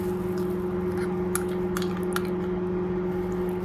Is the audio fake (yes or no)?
no